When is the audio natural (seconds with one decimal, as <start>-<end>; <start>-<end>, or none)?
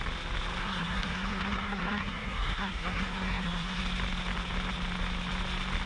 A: 0.0-0.6; 3.8-5.9